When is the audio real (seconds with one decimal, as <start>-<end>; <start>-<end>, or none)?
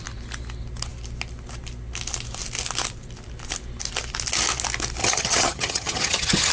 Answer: 0.0-5.0